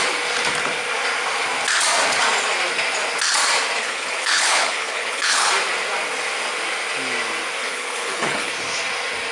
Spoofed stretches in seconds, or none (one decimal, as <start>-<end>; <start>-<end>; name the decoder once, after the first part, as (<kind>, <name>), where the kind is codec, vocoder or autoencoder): 3.8-5.5 (codec, HILCodec); 7.6-8.5